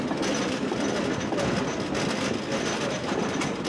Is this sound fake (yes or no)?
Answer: no